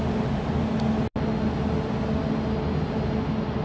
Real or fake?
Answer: real